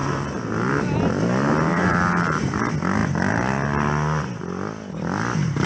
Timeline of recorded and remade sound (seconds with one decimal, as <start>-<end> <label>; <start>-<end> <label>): 0.0-0.8 remade; 0.8-1.7 recorded; 1.7-2.6 remade; 2.6-5.7 recorded